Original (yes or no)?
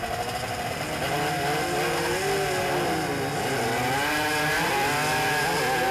yes